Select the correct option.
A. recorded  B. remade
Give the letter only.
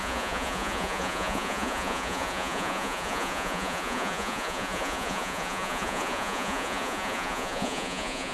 B